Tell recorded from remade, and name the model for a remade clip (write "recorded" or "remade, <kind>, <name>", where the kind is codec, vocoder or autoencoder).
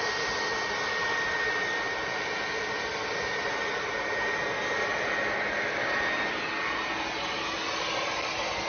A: recorded